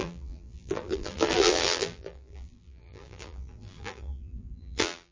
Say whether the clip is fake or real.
fake